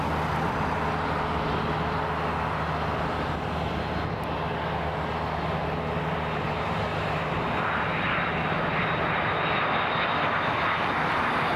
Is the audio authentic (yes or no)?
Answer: yes